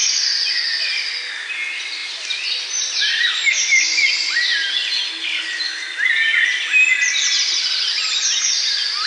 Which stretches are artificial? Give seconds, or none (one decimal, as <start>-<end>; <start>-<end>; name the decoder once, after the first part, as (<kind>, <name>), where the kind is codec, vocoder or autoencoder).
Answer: none